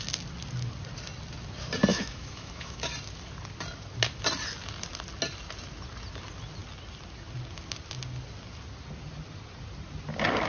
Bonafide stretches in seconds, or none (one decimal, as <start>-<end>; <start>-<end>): 0.0-1.9; 2.9-10.5